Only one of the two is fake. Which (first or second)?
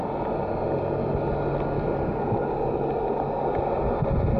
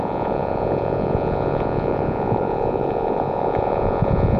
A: second